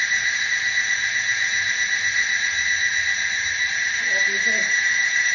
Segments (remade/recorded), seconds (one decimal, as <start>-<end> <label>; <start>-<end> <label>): 0.0-0.5 remade; 0.5-3.7 recorded; 3.7-5.3 remade